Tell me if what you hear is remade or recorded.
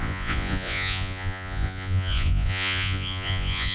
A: remade